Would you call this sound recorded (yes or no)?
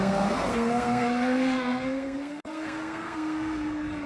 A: no